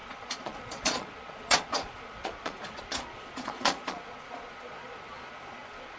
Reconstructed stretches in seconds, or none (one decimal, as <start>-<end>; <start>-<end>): 0.0-6.0